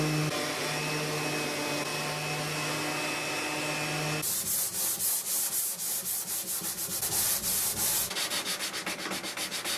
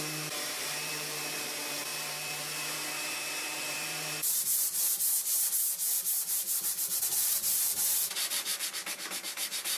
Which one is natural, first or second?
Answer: first